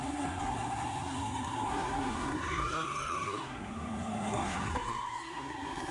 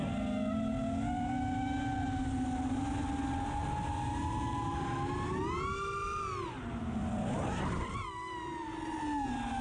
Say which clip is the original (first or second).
second